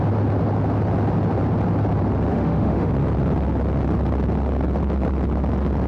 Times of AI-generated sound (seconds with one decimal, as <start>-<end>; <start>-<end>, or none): 2.3-2.9